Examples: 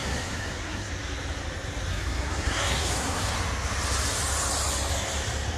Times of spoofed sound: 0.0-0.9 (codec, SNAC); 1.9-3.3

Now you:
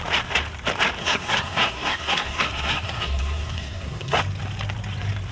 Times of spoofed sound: 1.0-4.2 (codec, SNAC)

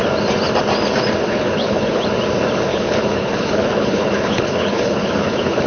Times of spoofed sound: 1.2-2.0 (codec, HILCodec); 2.7-5.7

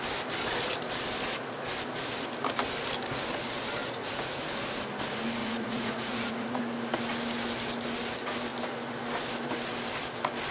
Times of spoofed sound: 3.8-4.4 (vocoder, Vocos); 5.4-6.6

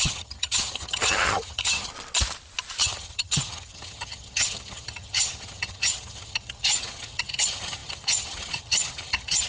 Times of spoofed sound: 0.0-1.9 (vocoder, HiFi-GAN); 2.8-9.5